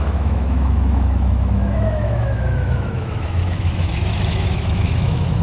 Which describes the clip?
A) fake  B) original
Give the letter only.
A